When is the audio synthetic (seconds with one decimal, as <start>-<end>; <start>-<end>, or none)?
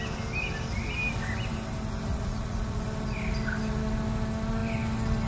2.1-2.8